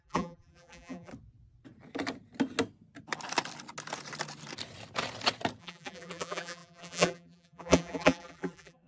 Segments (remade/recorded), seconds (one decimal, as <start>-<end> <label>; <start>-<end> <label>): 0.0-1.1 remade; 1.1-5.6 recorded; 5.6-8.9 remade